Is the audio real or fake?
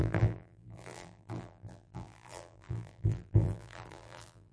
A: fake